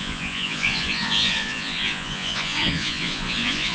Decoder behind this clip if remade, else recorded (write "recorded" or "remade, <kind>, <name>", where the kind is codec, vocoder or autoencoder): remade, vocoder, Vocos